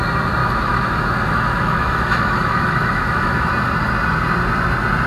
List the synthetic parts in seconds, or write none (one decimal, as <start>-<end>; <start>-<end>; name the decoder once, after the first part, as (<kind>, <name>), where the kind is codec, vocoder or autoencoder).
0.4-3.5 (autoencoder, DAC-VAE)

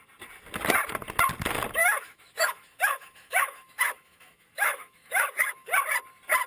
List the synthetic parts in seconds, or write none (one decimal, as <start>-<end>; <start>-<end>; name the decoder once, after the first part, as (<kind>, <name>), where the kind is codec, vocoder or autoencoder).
1.8-5.7 (autoencoder, DAC-VAE)

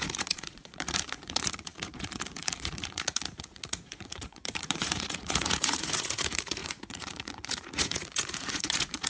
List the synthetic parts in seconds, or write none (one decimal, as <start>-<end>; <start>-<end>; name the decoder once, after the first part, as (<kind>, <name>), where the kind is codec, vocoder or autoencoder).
0.0-9.1 (vocoder, Vocos)